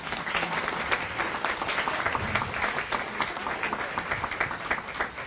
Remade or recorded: recorded